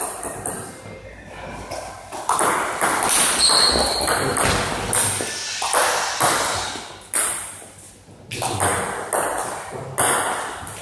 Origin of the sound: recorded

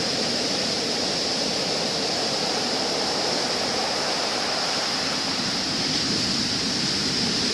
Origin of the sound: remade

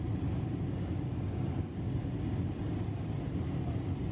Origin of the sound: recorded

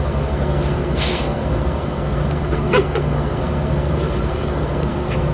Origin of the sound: remade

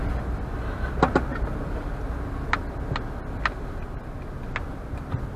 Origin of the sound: recorded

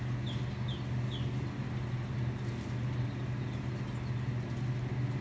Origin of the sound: recorded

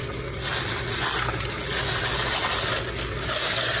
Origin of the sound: recorded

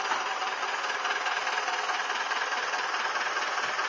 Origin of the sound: recorded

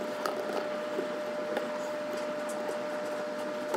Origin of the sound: recorded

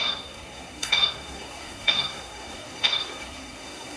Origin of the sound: remade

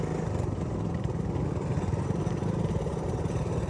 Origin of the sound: recorded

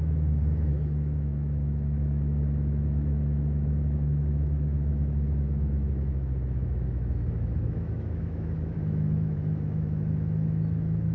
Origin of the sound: remade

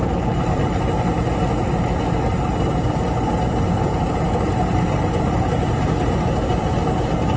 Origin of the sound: recorded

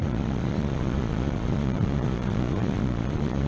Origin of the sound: remade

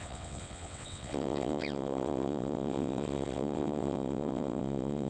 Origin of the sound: remade